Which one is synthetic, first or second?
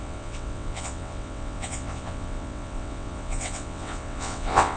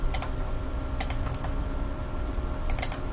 first